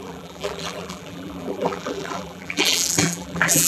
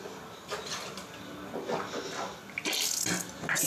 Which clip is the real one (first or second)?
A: second